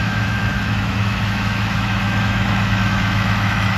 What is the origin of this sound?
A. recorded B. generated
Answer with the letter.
B